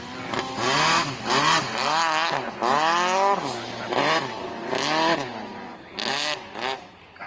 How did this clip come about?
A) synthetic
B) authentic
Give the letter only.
B